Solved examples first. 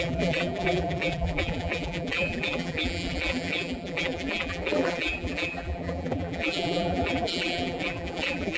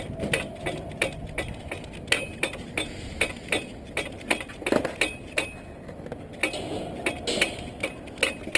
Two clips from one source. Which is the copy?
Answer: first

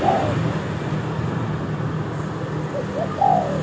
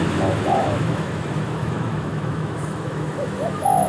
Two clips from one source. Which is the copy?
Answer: second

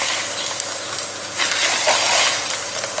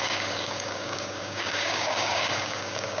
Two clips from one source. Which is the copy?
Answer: second